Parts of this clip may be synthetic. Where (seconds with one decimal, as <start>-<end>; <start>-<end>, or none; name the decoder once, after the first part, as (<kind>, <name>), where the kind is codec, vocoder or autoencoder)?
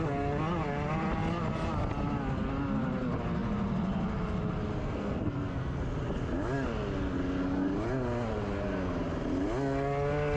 4.8-5.8 (codec, SNAC)